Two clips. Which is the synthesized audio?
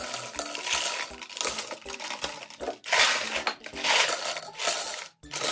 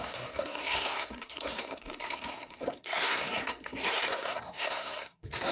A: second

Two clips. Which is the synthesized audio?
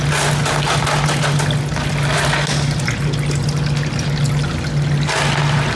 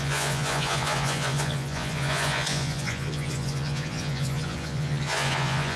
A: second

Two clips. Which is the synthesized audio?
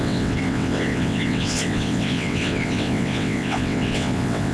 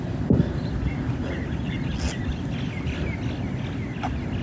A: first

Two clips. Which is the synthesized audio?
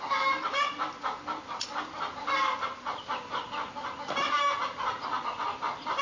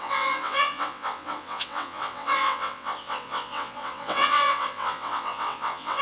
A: second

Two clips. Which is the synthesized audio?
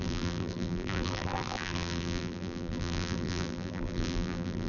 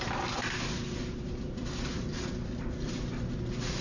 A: first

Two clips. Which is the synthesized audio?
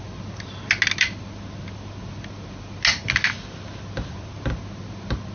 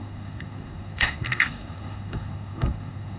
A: second